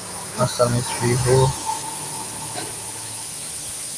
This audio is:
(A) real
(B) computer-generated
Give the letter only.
B